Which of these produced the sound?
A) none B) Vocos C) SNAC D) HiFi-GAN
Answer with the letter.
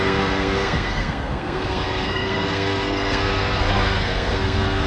C